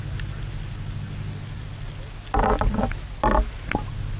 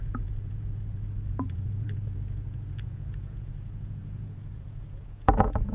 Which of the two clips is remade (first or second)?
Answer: second